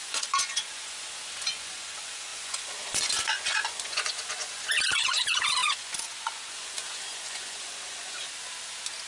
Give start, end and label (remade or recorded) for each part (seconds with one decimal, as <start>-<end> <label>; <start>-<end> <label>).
0.0-8.2 remade; 8.2-9.1 recorded